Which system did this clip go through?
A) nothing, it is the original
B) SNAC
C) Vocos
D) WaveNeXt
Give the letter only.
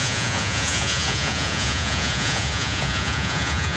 C